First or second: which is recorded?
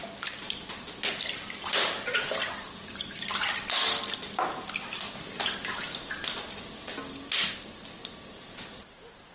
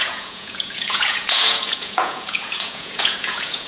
first